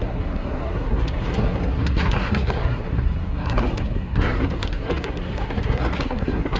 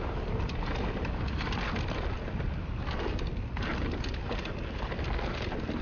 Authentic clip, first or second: second